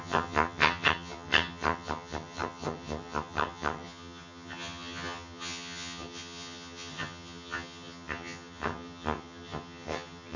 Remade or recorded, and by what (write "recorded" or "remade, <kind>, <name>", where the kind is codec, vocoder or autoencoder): remade, vocoder, HiFi-GAN